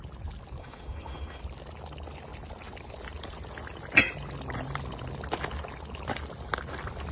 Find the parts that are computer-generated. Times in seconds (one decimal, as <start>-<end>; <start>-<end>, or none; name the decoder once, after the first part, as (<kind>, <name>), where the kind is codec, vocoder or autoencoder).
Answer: 0.6-1.4 (autoencoder, DAC-VAE)